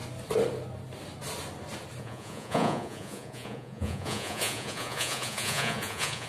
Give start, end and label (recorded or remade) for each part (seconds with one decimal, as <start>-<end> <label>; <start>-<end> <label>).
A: 0.0-2.0 recorded; 2.0-6.3 remade